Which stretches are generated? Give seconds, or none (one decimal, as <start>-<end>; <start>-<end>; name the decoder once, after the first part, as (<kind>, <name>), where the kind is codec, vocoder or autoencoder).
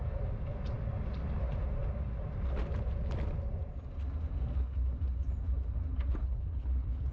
6.2-7.1 (codec, HILCodec)